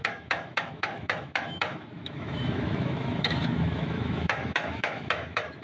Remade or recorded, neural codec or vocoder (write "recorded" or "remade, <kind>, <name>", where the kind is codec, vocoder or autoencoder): remade, autoencoder, DAC-VAE